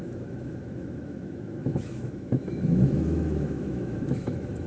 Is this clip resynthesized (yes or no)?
yes